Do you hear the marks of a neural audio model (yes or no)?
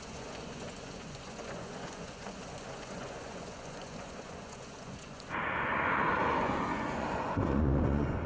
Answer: yes